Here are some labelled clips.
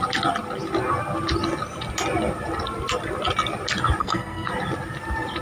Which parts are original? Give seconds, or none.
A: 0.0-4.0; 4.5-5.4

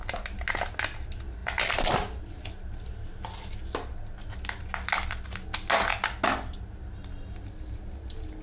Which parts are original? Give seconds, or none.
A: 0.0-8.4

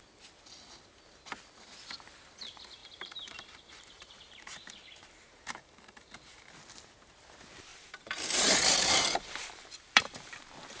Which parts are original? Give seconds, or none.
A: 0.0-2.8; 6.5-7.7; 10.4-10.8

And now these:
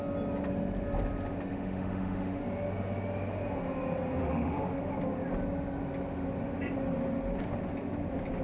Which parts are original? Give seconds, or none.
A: 0.0-1.5; 2.4-4.2; 4.8-8.4

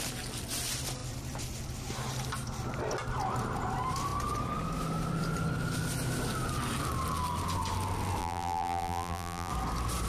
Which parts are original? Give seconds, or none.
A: 0.0-8.2; 9.5-10.1

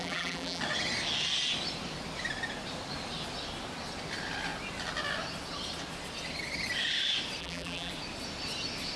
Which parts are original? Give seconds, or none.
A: 0.6-7.4; 7.9-9.0

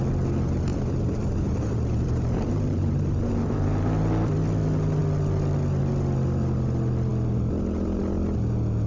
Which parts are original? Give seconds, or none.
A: 0.0-0.7; 3.9-8.9

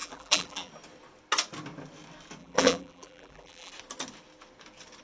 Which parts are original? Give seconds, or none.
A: 0.7-2.4; 3.7-5.0